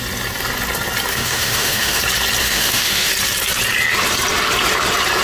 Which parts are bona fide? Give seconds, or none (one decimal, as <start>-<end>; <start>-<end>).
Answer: 0.0-1.1; 2.0-2.4; 3.1-5.2